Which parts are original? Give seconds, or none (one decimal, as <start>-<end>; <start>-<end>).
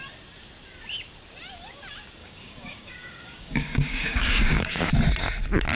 0.0-2.2; 4.9-5.7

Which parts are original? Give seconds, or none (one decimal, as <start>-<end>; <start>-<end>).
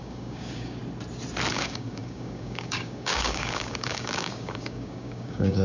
0.8-1.5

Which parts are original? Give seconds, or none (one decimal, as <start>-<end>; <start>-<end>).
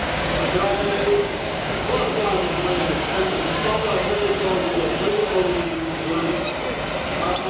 4.1-5.2; 6.3-7.5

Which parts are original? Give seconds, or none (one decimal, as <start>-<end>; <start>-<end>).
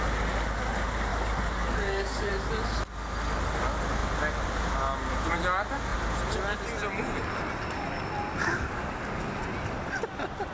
0.0-1.1; 2.3-8.4; 9.2-10.5